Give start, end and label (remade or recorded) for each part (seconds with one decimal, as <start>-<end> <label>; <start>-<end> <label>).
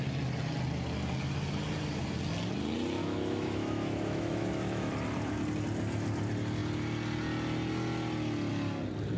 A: 0.0-3.0 recorded; 3.0-4.9 remade; 4.9-9.2 recorded